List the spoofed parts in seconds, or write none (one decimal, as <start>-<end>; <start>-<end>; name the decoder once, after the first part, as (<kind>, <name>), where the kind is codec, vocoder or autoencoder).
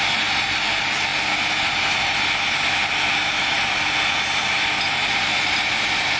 none